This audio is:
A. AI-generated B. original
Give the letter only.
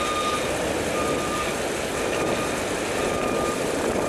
B